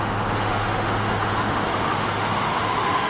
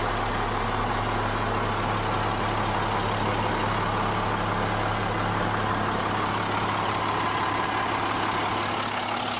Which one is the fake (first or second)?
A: first